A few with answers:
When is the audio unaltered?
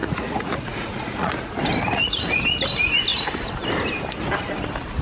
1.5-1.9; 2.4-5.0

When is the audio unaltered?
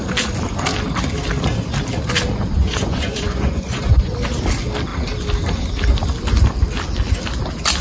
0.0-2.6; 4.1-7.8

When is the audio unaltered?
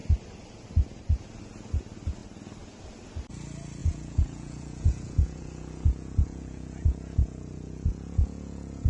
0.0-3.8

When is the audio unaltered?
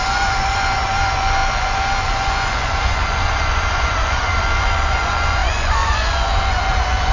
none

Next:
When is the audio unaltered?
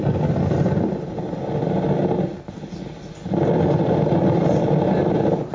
0.0-5.5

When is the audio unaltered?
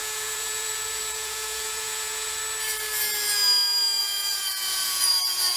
2.4-4.0; 5.1-5.6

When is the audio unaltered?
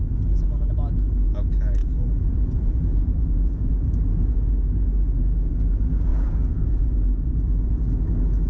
0.0-1.8; 4.5-6.1; 6.9-8.5